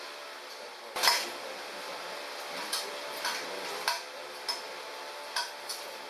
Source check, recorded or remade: recorded